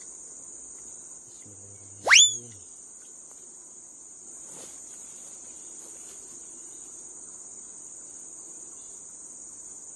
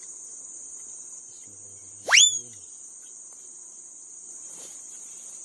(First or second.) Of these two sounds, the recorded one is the first